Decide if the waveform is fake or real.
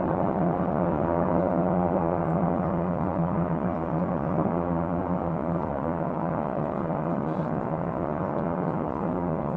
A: fake